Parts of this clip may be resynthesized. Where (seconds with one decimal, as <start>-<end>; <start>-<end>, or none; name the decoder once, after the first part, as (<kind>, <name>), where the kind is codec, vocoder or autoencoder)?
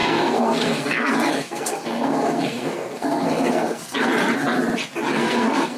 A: 0.0-4.1 (codec, SNAC); 5.1-5.8